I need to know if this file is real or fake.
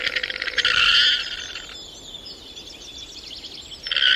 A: real